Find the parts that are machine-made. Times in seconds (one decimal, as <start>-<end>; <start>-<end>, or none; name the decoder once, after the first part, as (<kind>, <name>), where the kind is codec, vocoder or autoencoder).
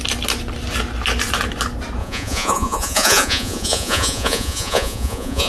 2.0-5.5 (vocoder, Vocos)